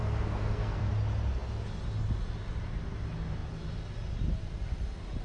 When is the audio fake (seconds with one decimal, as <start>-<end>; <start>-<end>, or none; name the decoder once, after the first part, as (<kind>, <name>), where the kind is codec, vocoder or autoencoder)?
0.0-0.9 (codec, SNAC)